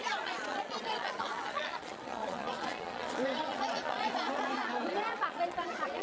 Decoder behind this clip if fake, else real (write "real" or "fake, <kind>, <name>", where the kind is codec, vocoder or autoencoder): fake, vocoder, Vocos